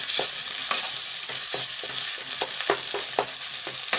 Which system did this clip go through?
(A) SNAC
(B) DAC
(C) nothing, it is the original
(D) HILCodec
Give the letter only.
C